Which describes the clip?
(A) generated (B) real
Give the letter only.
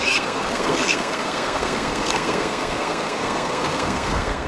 A